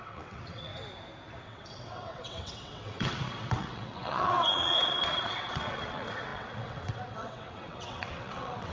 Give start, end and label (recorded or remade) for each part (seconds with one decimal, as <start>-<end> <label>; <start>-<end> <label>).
0.0-0.7 remade; 0.7-1.4 recorded; 1.4-8.7 remade